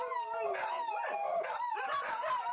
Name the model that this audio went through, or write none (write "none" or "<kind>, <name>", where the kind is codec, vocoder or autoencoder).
none